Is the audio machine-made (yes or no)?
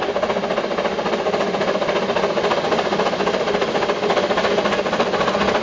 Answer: no